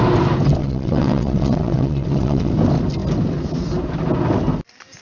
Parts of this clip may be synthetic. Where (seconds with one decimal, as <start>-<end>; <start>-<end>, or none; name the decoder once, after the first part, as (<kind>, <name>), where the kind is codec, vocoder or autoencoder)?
0.6-2.5 (vocoder, WaveNeXt)